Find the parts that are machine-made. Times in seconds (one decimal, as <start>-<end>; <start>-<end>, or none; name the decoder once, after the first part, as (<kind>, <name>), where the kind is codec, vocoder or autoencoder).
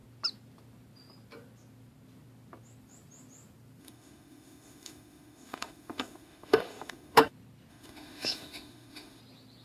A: 3.8-7.3 (autoencoder, DAC-VAE); 7.7-9.2